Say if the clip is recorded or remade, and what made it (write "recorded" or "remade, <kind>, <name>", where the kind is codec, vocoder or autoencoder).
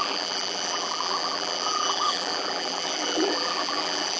remade, vocoder, BigVGAN v2